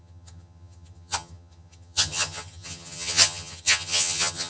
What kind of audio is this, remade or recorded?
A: remade